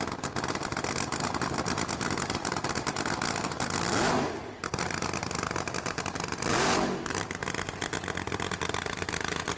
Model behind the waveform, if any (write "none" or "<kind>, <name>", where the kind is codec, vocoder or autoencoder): none